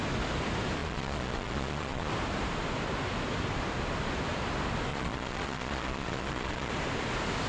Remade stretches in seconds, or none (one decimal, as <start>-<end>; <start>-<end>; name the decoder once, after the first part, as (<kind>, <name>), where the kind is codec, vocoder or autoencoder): 0.8-2.1 (vocoder, Vocos); 4.9-6.7